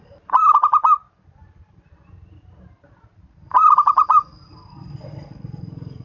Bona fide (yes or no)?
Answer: no